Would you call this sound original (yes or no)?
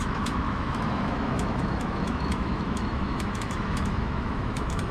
no